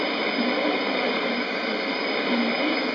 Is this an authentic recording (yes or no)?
no